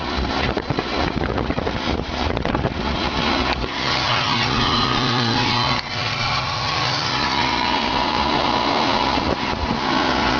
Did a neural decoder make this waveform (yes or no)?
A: yes